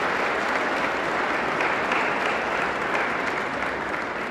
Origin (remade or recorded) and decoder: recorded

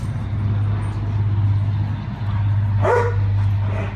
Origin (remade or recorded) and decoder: recorded